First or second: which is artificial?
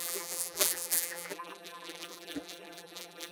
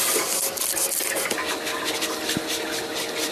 first